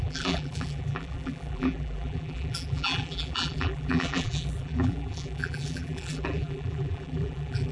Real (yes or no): no